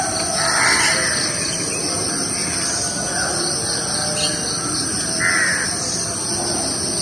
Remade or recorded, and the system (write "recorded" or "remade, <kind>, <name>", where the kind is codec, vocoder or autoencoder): recorded